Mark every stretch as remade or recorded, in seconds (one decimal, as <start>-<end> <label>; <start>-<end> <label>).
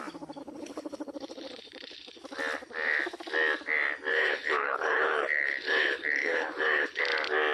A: 0.0-0.4 recorded; 0.4-2.2 remade; 2.2-4.1 recorded; 4.1-7.0 remade; 7.0-7.5 recorded